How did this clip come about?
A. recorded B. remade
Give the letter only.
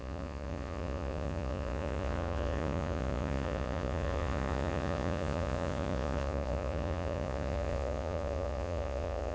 B